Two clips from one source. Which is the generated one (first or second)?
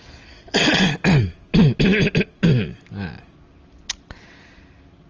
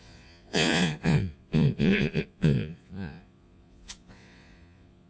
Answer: second